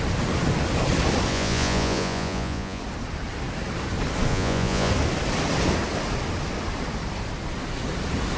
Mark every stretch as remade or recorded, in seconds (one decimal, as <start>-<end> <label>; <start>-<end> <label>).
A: 0.0-1.3 recorded; 1.3-2.8 remade; 2.8-4.3 recorded; 4.3-4.9 remade; 4.9-8.4 recorded